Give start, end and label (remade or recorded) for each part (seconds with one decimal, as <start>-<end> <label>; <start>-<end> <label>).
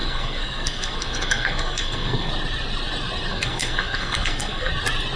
0.0-2.3 remade; 2.3-3.3 recorded; 3.3-4.7 remade; 4.7-5.2 recorded